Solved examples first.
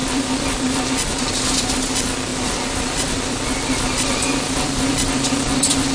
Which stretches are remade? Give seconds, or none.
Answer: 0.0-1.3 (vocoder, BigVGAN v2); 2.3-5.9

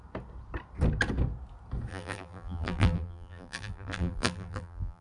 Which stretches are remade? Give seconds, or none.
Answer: 1.9-5.0 (vocoder, BigVGAN v2)

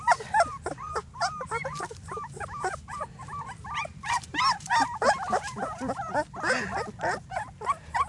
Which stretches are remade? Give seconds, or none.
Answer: 1.7-6.0 (vocoder, BigVGAN v2)

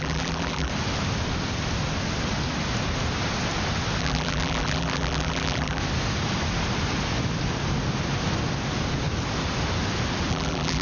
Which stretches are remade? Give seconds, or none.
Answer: 0.0-0.7 (vocoder, BigVGAN v2); 4.0-5.8; 10.3-10.8

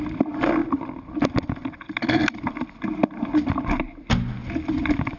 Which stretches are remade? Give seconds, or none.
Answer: 0.6-2.7 (vocoder, BigVGAN v2)

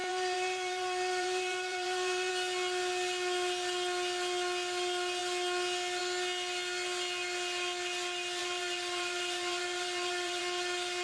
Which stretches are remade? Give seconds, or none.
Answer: 0.0-2.3 (vocoder, BigVGAN v2); 8.4-10.4